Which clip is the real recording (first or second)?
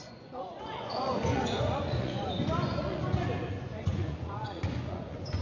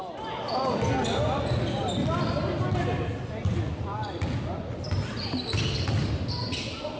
second